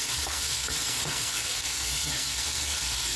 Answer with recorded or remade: remade